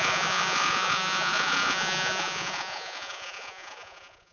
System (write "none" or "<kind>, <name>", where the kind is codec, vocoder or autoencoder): vocoder, Vocos